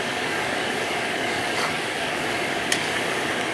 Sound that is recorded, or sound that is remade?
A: remade